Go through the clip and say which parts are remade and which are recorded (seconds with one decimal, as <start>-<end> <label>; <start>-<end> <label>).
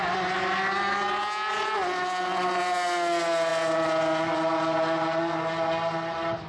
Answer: 0.0-6.5 recorded